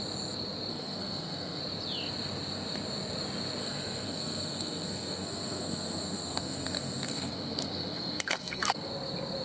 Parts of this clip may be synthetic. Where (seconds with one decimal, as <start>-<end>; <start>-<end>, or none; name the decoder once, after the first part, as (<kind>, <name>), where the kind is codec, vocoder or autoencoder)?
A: 0.7-1.6 (codec, SNAC); 3.6-8.9